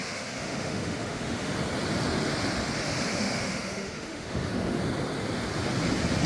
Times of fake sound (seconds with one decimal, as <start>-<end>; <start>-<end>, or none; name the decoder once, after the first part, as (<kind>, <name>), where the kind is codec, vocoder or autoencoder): 0.0-1.5 (autoencoder, DAC-VAE); 3.1-4.8